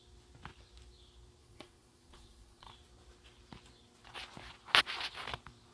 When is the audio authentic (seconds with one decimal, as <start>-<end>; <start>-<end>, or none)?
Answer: 0.0-1.4; 2.7-5.7